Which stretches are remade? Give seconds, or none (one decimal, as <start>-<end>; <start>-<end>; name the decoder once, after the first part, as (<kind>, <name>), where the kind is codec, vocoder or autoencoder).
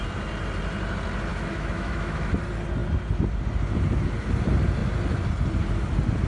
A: 1.3-2.3 (autoencoder, DAC-VAE)